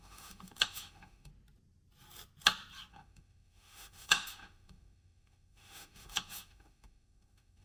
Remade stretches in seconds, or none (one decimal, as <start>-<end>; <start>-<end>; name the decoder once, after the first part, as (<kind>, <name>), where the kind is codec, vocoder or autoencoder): 0.0-1.3 (autoencoder, DAC-VAE); 2.9-7.6